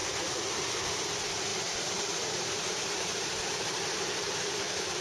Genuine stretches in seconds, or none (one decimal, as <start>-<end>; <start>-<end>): 0.0-5.0